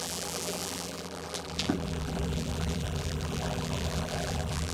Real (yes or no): no